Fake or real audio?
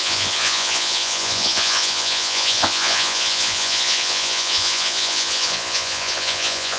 fake